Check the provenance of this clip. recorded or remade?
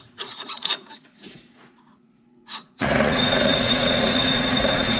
remade